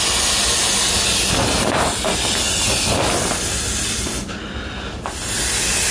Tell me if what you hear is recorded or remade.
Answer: recorded